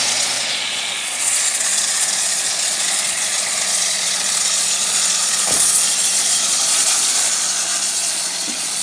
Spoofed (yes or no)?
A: yes